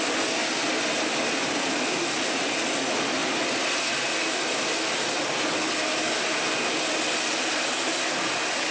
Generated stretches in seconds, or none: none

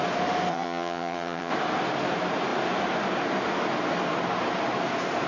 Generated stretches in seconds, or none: 0.5-1.5 (vocoder, HiFi-GAN)

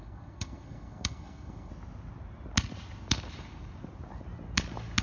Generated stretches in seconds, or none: 0.0-1.7 (codec, SNAC)

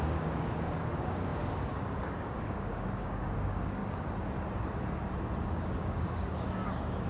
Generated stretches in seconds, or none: 0.0-3.8 (codec, DAC); 5.4-7.1

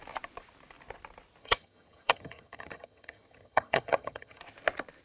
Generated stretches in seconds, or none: 1.4-4.4 (vocoder, HiFi-GAN)

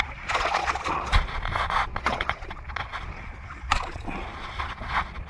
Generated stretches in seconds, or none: 0.0-5.3 (vocoder, Vocos)

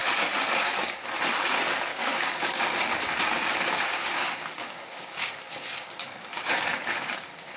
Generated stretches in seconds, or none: 1.9-3.0 (codec, DAC); 4.2-6.5

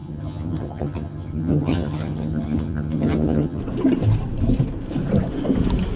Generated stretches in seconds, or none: 0.0-3.6 (vocoder, HiFi-GAN)